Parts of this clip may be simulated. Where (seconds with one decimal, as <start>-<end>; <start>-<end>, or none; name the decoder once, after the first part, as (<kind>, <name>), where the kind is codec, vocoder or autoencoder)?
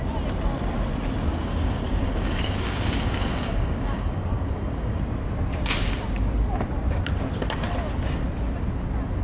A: 1.3-5.0 (codec, DAC)